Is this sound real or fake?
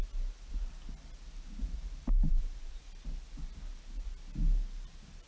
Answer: real